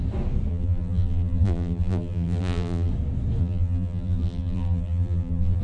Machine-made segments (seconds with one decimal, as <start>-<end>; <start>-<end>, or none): 0.5-2.9; 3.4-5.6